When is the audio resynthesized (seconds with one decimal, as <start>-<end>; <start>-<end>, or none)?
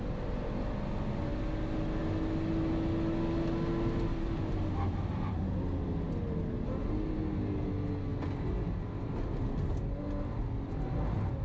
none